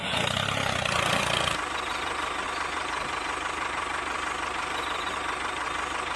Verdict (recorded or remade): recorded